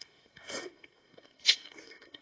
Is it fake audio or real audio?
fake